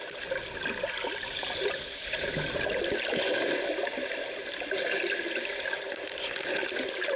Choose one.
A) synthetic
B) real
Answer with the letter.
B